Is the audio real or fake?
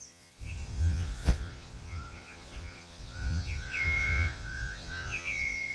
fake